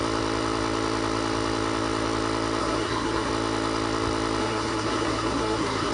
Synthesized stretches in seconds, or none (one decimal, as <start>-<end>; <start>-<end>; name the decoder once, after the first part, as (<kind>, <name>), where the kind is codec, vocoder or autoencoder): 2.6-3.3 (codec, SNAC); 4.4-5.9